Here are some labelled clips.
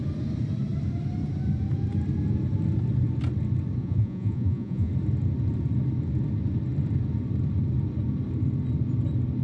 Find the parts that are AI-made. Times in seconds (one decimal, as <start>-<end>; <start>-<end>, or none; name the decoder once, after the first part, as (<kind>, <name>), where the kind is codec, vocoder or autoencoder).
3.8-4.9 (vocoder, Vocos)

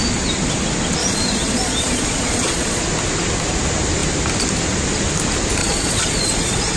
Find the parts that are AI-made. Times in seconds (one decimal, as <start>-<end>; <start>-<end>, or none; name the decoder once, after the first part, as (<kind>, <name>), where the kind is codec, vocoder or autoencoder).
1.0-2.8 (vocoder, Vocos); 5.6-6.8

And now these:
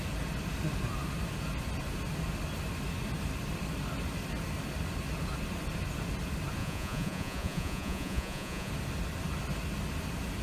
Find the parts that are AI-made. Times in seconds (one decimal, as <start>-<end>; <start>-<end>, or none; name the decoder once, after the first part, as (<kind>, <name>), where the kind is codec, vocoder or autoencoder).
6.6-8.7 (vocoder, Vocos)

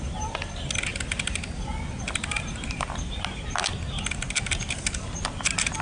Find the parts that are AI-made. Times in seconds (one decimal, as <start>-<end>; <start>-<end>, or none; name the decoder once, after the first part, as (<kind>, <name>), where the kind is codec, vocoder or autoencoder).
none

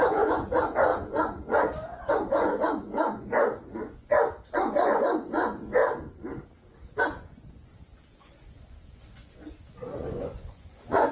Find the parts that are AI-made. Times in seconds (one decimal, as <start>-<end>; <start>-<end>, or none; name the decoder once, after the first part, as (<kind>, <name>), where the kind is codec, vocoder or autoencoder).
0.0-5.8 (vocoder, Vocos); 7.0-11.1

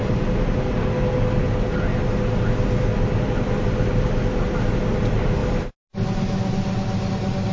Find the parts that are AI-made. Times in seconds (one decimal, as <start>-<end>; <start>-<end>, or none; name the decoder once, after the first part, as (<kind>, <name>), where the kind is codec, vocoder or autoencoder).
none

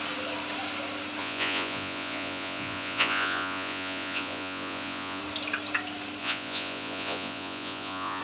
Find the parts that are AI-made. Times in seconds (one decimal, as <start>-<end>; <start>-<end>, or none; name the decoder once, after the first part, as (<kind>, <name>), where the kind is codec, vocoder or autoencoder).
1.2-5.2 (vocoder, Vocos); 6.2-8.2

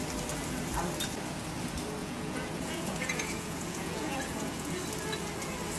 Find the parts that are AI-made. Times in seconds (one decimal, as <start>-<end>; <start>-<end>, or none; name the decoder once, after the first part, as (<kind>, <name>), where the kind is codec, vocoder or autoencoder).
2.0-4.7 (vocoder, Vocos)